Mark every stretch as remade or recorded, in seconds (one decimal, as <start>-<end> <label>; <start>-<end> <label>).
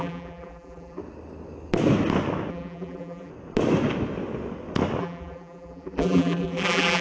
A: 0.0-1.0 remade; 1.0-2.5 recorded; 2.5-3.3 remade; 3.3-5.0 recorded; 5.0-7.0 remade